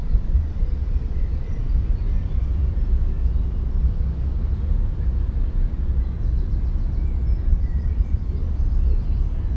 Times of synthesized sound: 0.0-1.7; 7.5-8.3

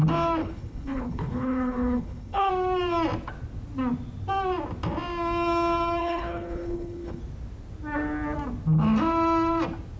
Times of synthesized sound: 0.4-2.5; 6.0-7.2

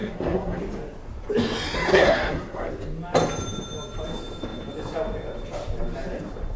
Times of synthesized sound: 0.0-0.6; 1.9-2.7

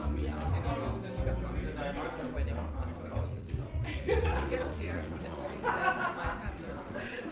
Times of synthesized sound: 0.0-0.7; 3.2-5.8; 6.5-7.3

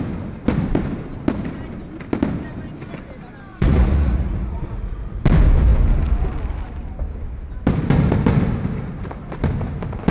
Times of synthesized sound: 3.5-5.2

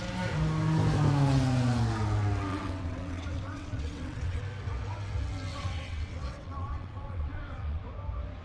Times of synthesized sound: 2.5-4.4; 5.5-7.8

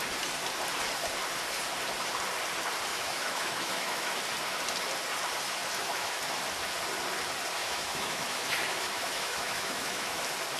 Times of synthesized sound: 2.9-4.2; 5.6-6.2; 7.6-10.2

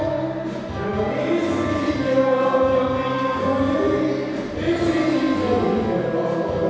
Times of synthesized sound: none